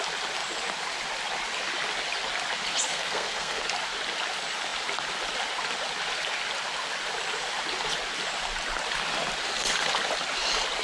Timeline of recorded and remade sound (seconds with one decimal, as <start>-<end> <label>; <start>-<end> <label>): 0.0-2.9 recorded; 2.9-3.6 remade; 3.6-10.8 recorded

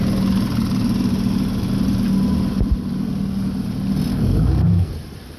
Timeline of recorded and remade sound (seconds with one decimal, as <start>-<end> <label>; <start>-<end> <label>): 0.0-4.1 recorded; 4.1-4.9 remade; 4.9-5.4 recorded

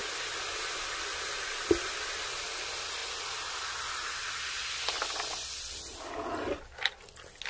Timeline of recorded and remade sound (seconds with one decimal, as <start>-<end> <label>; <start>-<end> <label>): 0.0-7.5 recorded

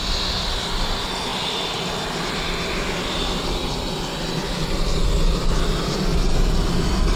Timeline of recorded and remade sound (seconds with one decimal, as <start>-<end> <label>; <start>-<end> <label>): 0.0-7.2 recorded